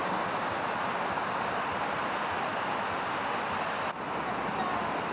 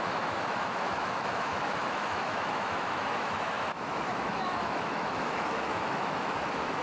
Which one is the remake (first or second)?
second